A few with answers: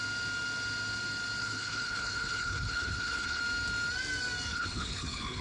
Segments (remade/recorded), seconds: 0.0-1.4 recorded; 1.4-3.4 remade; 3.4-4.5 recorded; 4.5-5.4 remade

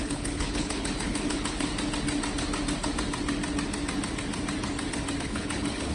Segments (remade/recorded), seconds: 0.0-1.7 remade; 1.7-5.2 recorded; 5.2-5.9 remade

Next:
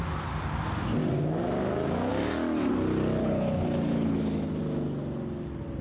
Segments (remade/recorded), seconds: 0.0-3.2 recorded; 3.2-4.6 remade; 4.6-5.8 recorded